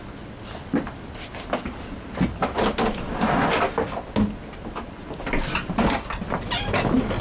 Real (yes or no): yes